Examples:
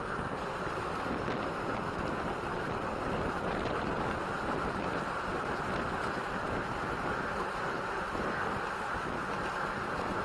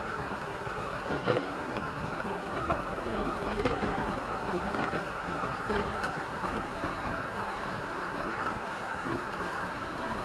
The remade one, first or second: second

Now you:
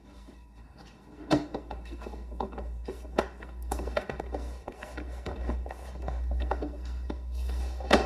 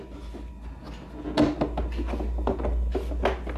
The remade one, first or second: first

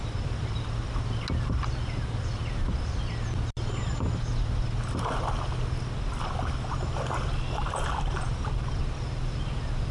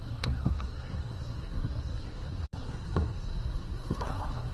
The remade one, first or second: second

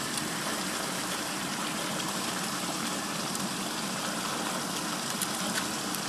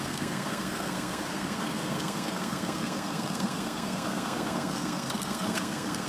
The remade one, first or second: second